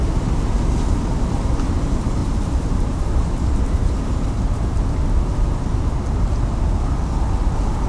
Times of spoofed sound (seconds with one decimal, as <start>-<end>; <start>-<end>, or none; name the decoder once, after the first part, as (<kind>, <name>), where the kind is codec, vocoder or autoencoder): 2.2-4.8 (vocoder, BigVGAN v2)